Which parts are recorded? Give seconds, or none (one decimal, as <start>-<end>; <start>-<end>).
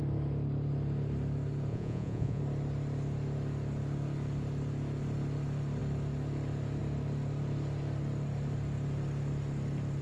0.0-1.7; 2.4-10.0